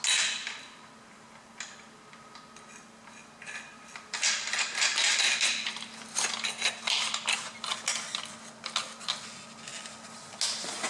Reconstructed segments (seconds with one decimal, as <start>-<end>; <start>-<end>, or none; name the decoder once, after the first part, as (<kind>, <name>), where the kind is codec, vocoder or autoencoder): none